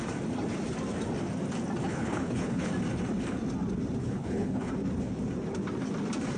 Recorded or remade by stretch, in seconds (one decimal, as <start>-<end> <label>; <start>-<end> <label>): 0.0-1.8 recorded; 1.8-2.7 remade; 2.7-4.0 recorded; 4.0-4.7 remade; 4.7-6.4 recorded